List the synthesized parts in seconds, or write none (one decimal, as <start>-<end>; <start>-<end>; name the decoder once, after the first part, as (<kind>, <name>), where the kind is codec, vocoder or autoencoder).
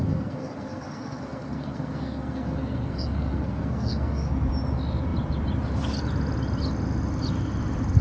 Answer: 0.0-4.3 (codec, SNAC)